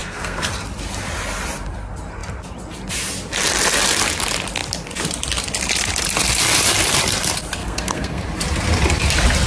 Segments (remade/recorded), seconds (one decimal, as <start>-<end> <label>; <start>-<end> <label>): 0.0-0.5 remade; 0.5-7.6 recorded; 7.6-8.2 remade; 8.2-9.5 recorded